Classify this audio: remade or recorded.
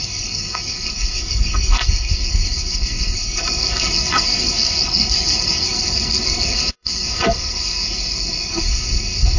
remade